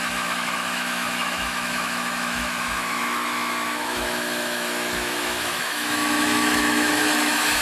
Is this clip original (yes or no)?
no